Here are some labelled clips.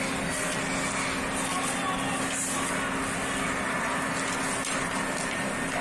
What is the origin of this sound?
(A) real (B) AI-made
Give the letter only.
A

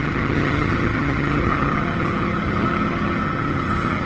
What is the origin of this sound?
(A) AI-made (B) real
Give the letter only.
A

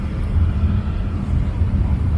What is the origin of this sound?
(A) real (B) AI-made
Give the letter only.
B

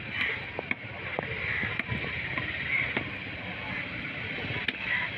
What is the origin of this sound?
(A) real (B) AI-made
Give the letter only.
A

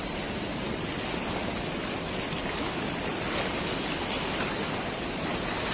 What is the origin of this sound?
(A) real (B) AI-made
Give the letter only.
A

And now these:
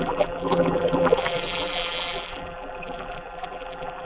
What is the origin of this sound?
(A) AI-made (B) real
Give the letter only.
A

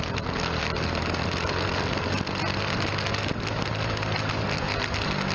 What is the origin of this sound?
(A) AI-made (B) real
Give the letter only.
B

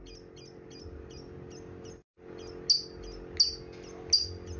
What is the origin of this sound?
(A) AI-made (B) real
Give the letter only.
B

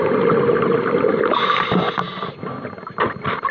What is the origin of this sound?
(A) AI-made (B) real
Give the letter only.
B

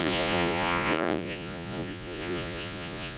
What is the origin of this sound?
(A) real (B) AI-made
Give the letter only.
B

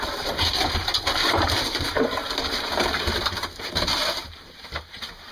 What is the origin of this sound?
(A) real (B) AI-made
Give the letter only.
B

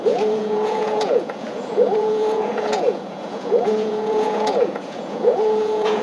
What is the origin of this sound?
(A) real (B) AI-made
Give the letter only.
B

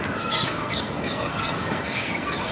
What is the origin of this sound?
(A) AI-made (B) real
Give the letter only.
A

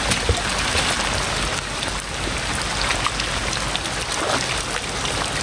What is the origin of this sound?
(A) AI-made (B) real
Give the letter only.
B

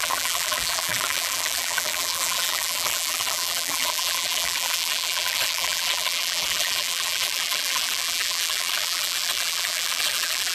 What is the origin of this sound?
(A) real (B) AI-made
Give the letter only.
B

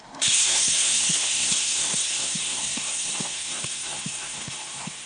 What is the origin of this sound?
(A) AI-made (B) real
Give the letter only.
A